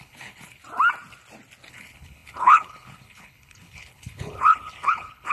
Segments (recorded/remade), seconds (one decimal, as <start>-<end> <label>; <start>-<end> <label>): 0.0-0.6 remade; 0.6-1.7 recorded; 1.7-5.3 remade